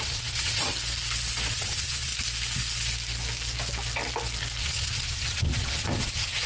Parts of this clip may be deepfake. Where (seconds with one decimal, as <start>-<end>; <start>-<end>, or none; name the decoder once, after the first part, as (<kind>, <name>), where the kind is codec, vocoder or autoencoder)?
0.0-0.7 (vocoder, Vocos); 1.5-2.1; 4.6-6.5